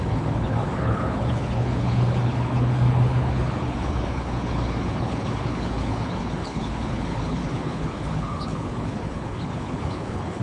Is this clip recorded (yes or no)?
no